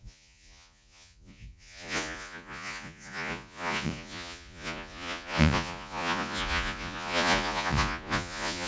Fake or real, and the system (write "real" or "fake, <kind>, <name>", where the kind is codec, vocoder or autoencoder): fake, vocoder, Vocos